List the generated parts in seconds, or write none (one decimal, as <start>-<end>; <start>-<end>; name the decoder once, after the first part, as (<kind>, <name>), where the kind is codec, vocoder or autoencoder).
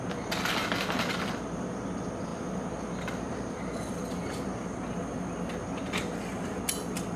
none